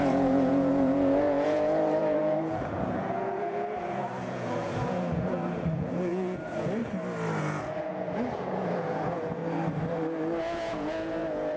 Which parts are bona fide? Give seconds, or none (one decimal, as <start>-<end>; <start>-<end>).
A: 6.8-7.4; 9.4-10.4